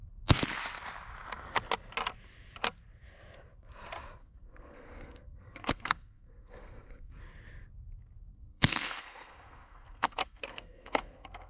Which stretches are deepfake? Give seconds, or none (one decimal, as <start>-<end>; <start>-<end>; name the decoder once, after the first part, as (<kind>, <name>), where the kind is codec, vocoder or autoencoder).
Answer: 4.2-7.2 (codec, SNAC); 8.3-11.5